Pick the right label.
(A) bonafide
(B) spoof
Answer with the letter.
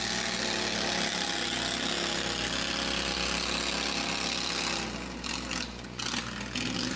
A